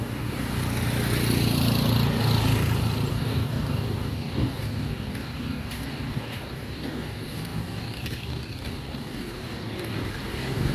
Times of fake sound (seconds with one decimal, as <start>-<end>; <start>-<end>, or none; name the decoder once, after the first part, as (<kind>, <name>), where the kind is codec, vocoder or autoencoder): 0.0-0.6 (codec, DAC); 3.1-10.7